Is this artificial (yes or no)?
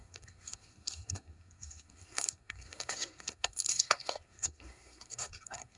yes